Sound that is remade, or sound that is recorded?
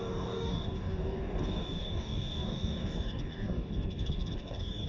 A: remade